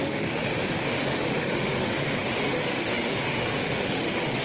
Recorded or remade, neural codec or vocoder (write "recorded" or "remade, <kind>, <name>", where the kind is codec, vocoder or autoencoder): remade, autoencoder, DAC-VAE